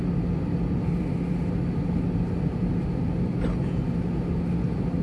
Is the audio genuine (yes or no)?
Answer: yes